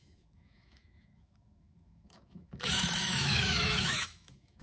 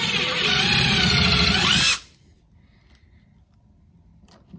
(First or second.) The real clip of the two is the second